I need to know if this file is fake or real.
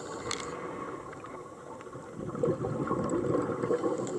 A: real